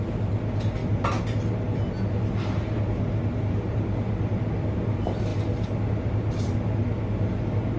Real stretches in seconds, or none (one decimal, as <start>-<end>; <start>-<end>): 0.0-7.8